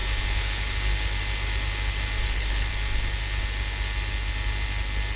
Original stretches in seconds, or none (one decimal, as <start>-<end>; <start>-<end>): 0.0-2.3; 2.7-5.2